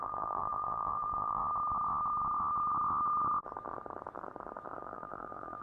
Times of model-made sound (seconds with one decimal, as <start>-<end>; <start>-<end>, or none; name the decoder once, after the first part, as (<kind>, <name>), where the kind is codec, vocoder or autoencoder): 0.0-1.4 (vocoder, BigVGAN v2); 4.8-5.6